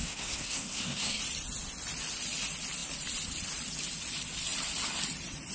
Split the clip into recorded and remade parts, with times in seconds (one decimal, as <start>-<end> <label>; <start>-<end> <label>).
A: 0.0-1.2 remade; 1.2-5.5 recorded